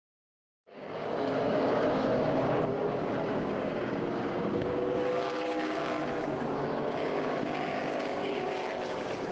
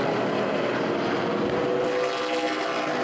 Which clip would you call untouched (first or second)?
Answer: second